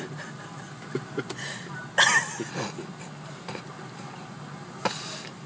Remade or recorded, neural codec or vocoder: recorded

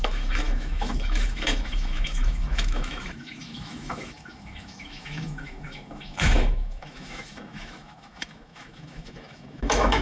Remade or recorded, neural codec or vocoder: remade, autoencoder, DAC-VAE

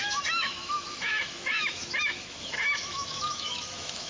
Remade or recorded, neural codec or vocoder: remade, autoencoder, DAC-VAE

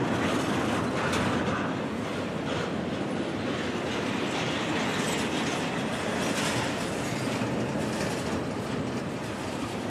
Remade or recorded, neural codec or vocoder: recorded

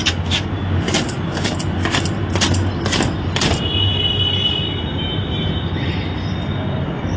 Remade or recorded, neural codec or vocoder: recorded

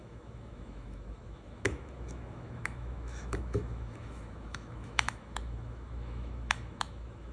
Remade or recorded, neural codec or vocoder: remade, autoencoder, DAC-VAE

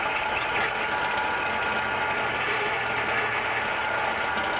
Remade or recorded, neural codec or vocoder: recorded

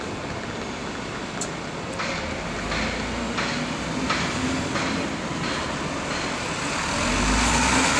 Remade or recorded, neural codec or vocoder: recorded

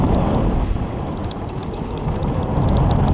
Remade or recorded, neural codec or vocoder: recorded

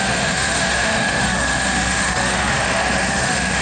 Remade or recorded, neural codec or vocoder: remade, autoencoder, DAC-VAE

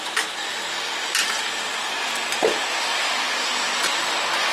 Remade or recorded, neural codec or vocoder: recorded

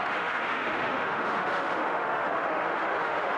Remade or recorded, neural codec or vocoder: remade, autoencoder, DAC-VAE